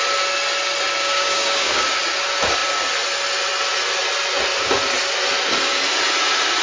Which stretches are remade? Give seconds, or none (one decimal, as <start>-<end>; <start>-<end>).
1.0-1.8